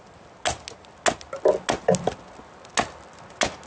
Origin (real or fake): real